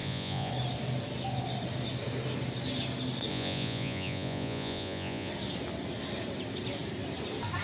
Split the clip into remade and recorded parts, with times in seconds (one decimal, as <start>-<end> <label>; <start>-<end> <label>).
0.0-0.5 remade; 0.5-3.3 recorded; 3.3-5.3 remade; 5.3-7.6 recorded